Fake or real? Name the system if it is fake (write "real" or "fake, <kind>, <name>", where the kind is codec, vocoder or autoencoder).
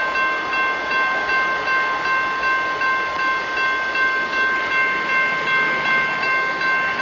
real